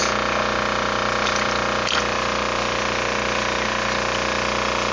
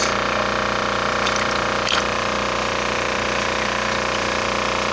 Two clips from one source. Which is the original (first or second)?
first